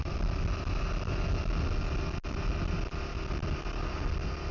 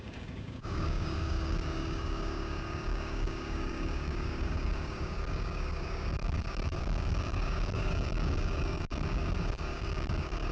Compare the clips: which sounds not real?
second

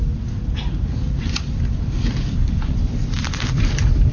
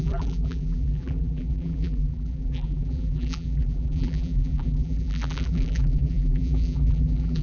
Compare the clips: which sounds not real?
second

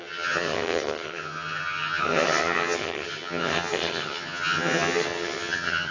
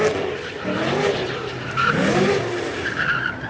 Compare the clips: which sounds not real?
first